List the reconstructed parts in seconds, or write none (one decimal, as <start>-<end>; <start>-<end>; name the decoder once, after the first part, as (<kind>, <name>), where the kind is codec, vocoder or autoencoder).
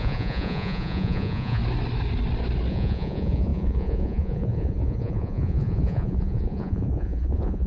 0.0-1.6 (vocoder, Vocos); 2.7-7.7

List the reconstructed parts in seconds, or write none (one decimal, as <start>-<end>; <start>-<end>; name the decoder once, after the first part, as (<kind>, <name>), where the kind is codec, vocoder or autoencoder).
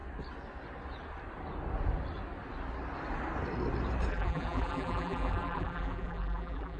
4.1-6.8 (vocoder, BigVGAN v2)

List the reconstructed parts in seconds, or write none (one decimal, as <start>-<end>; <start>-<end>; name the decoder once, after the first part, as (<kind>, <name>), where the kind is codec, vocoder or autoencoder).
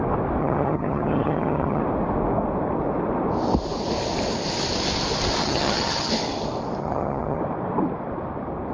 0.4-1.8 (vocoder, HiFi-GAN); 5.4-6.1; 6.8-7.4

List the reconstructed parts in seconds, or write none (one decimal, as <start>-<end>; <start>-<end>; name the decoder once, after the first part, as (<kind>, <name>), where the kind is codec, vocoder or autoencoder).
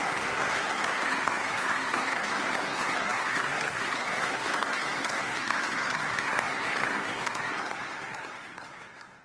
0.0-9.2 (codec, SNAC)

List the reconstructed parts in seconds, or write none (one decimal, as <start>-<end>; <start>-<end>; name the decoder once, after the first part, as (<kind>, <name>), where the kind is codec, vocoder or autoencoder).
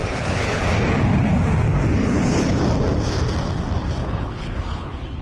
0.0-0.6 (codec, HILCodec); 2.0-2.6; 4.0-5.2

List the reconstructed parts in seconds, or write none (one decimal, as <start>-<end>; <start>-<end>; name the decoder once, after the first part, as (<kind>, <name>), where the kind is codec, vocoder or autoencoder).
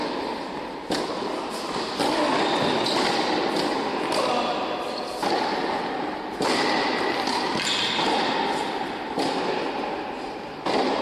none